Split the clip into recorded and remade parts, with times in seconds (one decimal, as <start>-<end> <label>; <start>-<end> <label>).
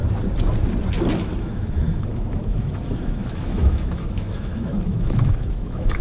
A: 0.0-1.2 recorded; 1.2-6.0 remade